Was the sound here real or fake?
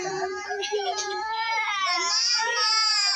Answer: fake